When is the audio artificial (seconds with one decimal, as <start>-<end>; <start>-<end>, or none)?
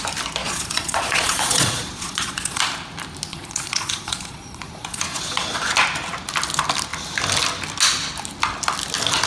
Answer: 0.4-2.6; 3.3-5.6